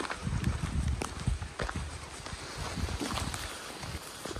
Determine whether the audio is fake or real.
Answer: real